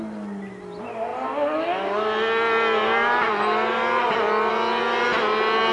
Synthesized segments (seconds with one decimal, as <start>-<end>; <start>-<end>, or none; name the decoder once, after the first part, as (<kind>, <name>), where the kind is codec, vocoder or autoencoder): none